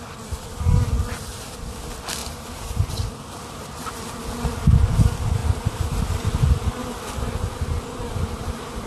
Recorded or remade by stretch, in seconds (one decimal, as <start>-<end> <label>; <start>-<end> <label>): 0.0-2.2 recorded; 2.2-2.9 remade; 2.9-5.4 recorded; 5.4-6.0 remade; 6.0-8.1 recorded; 8.1-8.9 remade

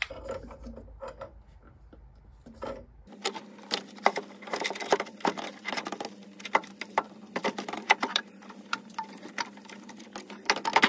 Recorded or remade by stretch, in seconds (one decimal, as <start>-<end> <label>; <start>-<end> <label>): 0.0-3.2 recorded; 3.2-5.7 remade; 5.7-6.6 recorded; 6.6-9.2 remade; 9.2-10.9 recorded

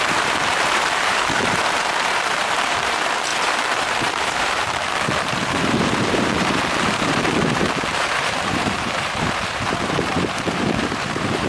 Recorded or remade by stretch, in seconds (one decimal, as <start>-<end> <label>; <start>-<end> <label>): 0.0-11.5 remade

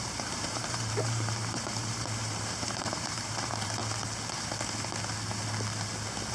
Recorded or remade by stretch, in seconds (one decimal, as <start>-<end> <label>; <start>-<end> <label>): 0.0-3.8 remade; 3.8-6.3 recorded

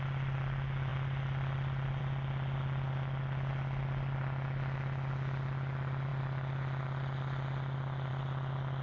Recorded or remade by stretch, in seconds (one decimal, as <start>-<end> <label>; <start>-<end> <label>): 0.0-8.8 recorded